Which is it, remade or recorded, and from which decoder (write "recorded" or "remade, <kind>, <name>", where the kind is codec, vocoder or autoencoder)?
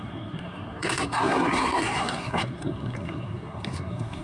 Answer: remade, codec, SNAC